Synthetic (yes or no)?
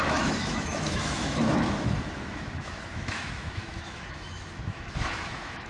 yes